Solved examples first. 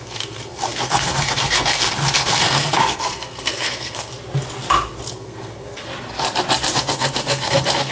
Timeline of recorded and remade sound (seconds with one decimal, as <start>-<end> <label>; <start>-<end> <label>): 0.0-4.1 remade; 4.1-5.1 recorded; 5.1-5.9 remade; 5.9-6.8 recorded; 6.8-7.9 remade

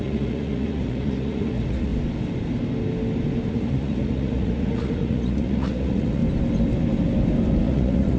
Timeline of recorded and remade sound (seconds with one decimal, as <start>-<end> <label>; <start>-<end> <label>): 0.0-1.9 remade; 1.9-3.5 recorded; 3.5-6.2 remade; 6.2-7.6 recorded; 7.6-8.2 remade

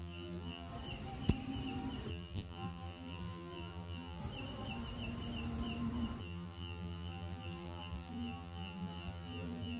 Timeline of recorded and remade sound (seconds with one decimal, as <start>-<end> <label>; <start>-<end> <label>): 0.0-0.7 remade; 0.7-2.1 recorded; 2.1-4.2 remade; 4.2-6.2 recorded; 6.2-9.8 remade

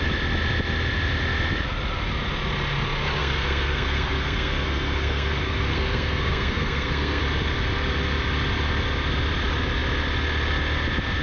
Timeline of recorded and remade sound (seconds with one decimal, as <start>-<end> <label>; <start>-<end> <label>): 0.0-3.2 recorded; 3.2-7.2 remade; 7.2-11.2 recorded